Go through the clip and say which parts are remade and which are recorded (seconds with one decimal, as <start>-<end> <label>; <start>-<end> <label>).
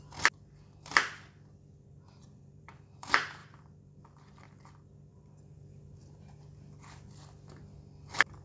0.0-2.2 recorded; 2.2-2.7 remade; 2.7-3.4 recorded; 3.4-4.0 remade; 4.0-5.1 recorded; 5.1-6.2 remade; 6.2-8.4 recorded